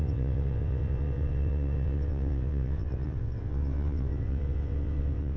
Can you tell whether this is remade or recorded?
remade